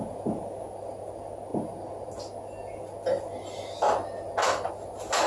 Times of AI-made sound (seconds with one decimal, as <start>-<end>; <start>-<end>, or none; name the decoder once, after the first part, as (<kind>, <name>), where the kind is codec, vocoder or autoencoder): none